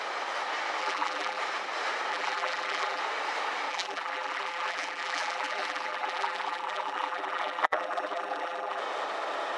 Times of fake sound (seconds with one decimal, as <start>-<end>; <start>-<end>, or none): 0.8-1.4; 2.1-3.0; 3.7-8.8